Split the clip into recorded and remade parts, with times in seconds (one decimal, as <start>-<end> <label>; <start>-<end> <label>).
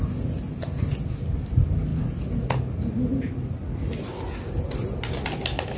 0.0-5.8 recorded